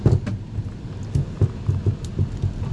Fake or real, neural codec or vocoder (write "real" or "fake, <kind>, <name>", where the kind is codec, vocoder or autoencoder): real